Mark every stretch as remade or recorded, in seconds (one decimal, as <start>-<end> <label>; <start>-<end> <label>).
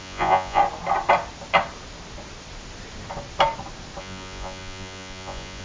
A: 0.0-0.6 remade; 0.6-4.0 recorded; 4.0-5.6 remade